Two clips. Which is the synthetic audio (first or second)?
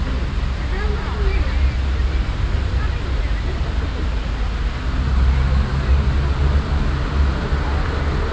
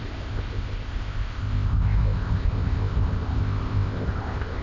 second